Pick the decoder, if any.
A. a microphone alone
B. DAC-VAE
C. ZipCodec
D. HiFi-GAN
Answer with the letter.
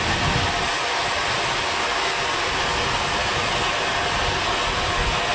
A